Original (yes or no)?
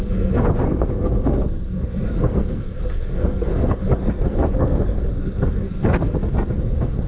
no